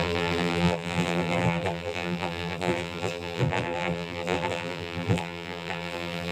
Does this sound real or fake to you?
fake